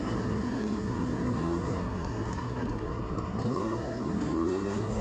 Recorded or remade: remade